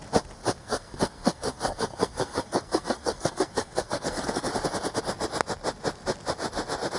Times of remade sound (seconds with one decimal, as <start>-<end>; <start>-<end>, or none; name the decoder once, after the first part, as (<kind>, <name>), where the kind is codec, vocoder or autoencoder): 0.6-4.5 (codec, SNAC)